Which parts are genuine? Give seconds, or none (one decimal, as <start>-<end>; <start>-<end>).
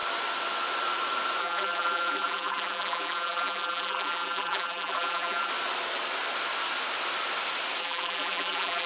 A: 0.0-1.4; 5.5-7.8